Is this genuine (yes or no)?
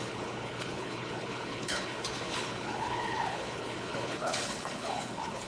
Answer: no